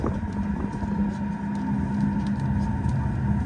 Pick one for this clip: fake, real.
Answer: real